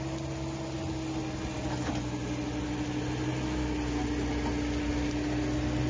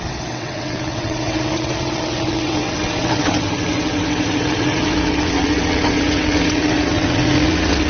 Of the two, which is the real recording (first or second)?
first